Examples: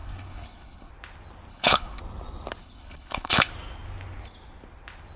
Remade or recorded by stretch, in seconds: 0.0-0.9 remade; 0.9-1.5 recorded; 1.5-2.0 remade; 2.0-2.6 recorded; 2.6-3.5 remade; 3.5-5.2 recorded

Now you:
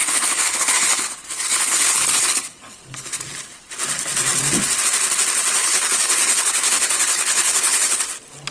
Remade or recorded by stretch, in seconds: 0.0-3.2 remade; 3.2-5.6 recorded; 5.6-8.0 remade; 8.0-8.5 recorded

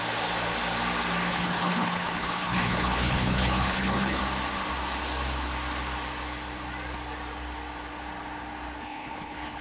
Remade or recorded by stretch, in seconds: 0.0-1.3 recorded; 1.3-4.2 remade; 4.2-8.8 recorded; 8.8-9.6 remade